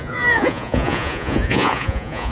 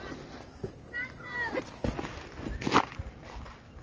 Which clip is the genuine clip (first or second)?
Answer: second